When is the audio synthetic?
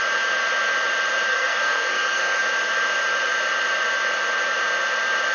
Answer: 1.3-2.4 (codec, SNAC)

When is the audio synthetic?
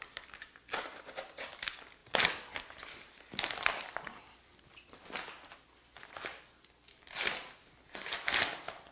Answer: none